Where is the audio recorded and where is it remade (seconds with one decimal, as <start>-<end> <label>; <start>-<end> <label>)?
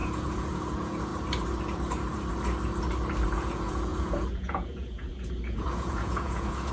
0.0-1.1 remade; 1.1-3.4 recorded; 3.4-6.7 remade